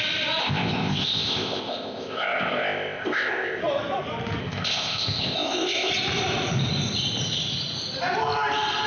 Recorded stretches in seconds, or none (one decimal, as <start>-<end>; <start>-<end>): 0.0-0.4; 3.6-4.4; 5.9-8.9